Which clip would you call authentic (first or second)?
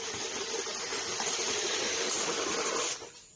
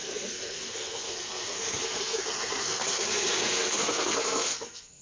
first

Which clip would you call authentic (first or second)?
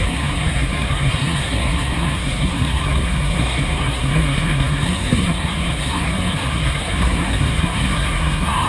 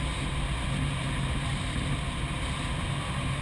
second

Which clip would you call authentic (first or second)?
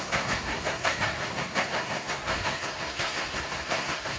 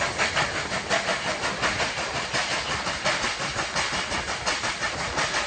second